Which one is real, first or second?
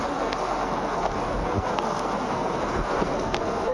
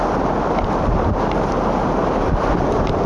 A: second